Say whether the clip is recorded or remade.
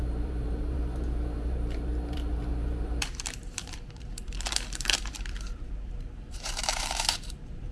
remade